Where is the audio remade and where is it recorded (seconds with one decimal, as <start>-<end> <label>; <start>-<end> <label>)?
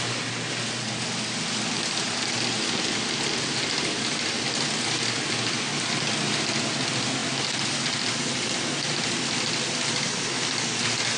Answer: 0.0-7.2 recorded; 7.2-8.5 remade; 8.5-11.2 recorded